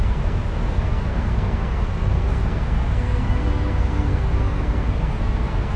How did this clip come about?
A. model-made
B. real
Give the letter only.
A